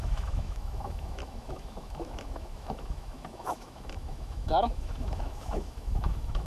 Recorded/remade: remade